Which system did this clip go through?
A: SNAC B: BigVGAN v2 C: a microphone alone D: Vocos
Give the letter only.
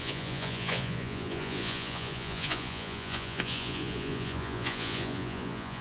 D